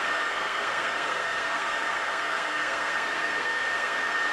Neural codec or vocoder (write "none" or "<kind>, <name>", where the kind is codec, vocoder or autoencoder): codec, SNAC